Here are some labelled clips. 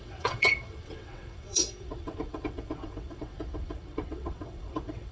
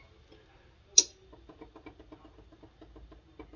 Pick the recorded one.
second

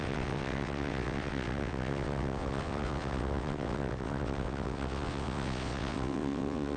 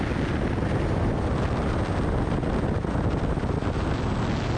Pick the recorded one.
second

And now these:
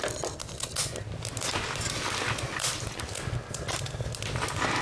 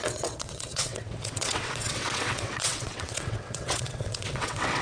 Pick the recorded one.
first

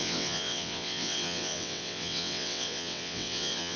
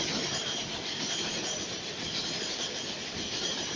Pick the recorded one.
second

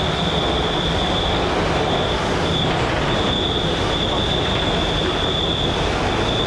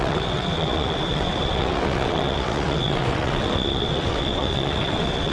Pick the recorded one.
first